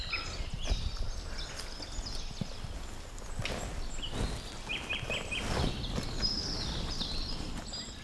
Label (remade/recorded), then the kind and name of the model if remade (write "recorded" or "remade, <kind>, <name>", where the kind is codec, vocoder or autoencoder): recorded